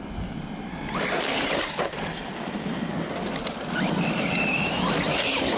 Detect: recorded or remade recorded